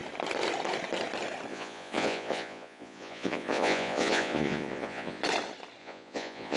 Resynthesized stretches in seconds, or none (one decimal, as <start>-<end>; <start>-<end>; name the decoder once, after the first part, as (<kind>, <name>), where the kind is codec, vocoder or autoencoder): 1.5-5.2 (vocoder, Vocos); 5.8-6.6